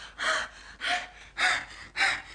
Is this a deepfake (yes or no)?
no